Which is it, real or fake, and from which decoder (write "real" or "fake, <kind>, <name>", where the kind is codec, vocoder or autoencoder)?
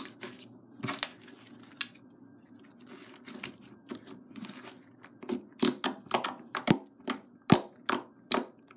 real